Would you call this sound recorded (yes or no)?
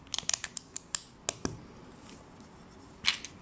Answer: yes